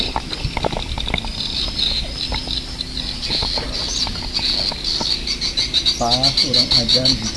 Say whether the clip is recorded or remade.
recorded